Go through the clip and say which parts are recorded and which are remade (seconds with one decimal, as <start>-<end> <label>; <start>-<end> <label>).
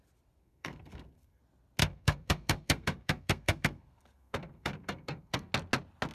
0.0-0.4 recorded; 0.4-1.4 remade; 1.4-1.8 recorded; 1.8-5.5 remade; 5.5-6.1 recorded